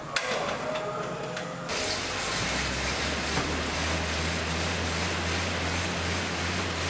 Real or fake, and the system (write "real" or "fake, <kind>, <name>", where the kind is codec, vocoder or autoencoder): real